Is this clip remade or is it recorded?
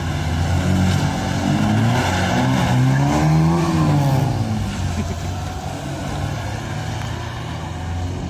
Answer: recorded